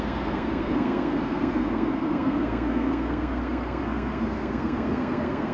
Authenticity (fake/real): fake